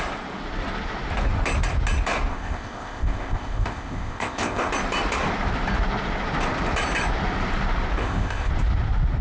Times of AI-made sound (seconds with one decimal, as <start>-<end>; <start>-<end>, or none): 2.3-4.7; 8.0-8.5